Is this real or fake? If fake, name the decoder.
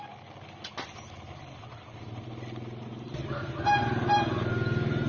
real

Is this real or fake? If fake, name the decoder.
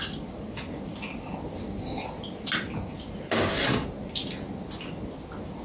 real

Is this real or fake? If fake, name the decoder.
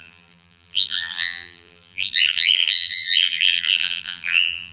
fake, vocoder, BigVGAN v2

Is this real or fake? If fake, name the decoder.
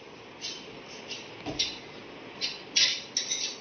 real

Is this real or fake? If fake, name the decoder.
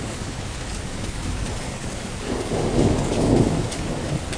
fake, codec, DAC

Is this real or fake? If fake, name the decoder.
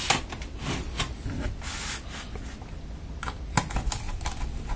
real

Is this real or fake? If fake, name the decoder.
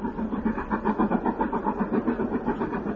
real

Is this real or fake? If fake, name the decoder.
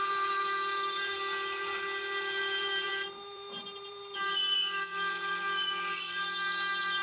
fake, vocoder, BigVGAN v2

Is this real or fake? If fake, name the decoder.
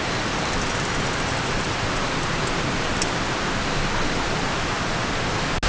real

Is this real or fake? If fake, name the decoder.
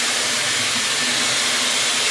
real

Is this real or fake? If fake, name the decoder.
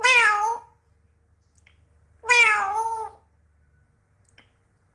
real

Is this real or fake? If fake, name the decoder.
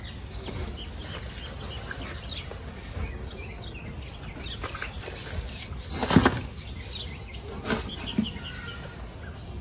real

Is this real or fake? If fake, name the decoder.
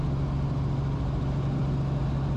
real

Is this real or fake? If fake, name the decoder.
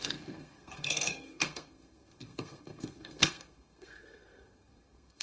fake, codec, SNAC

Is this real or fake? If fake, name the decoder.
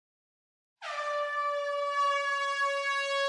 real